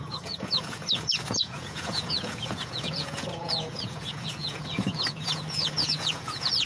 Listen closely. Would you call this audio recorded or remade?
remade